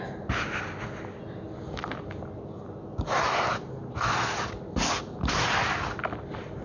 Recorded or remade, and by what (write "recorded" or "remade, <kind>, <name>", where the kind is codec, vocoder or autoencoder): recorded